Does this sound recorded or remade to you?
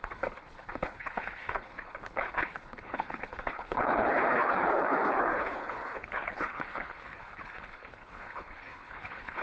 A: remade